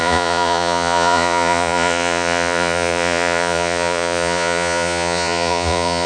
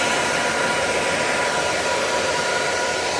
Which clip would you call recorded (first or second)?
second